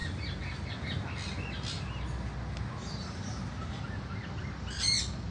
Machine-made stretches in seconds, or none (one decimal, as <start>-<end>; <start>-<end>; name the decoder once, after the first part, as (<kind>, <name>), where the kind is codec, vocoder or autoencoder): 0.0-1.1 (vocoder, BigVGAN v2); 2.8-4.2